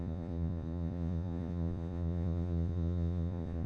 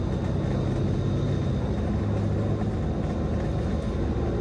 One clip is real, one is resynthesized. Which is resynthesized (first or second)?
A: first